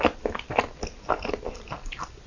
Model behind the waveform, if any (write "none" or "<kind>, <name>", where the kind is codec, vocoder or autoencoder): none